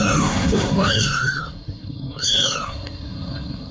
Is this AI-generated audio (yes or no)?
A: yes